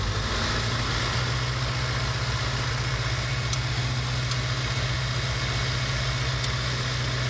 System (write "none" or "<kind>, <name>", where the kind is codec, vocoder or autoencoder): none